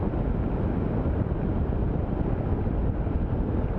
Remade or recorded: recorded